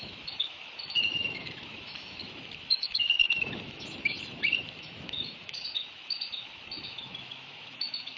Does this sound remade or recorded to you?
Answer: remade